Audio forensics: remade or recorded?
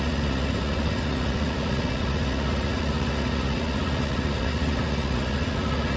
remade